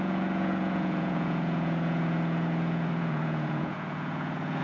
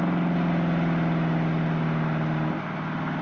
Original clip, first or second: second